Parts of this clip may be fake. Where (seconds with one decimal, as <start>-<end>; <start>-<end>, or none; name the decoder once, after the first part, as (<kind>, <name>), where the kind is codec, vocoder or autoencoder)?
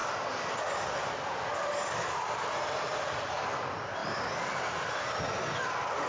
none